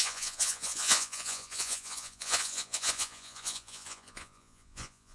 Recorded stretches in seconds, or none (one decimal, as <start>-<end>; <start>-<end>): none